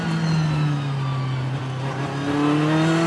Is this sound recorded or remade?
recorded